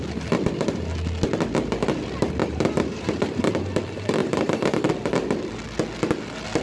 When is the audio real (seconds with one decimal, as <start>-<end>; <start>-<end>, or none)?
0.0-2.4; 3.8-4.2; 4.9-6.6